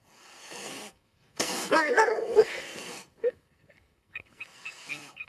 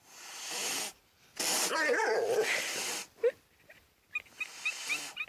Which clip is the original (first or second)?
second